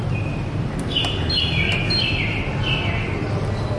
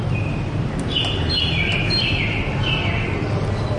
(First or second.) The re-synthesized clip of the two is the second